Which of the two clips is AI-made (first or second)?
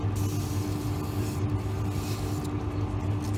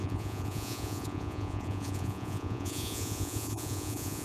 second